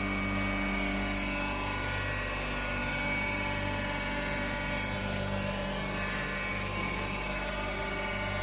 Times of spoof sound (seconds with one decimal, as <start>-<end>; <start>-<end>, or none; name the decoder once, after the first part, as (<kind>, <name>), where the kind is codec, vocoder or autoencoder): 6.5-7.5 (autoencoder, DAC-VAE)